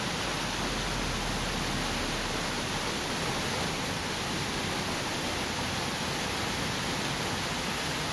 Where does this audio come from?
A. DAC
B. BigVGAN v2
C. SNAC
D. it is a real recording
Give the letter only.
D